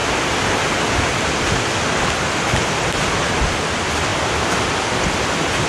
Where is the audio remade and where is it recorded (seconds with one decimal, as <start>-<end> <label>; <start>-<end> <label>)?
0.0-5.7 recorded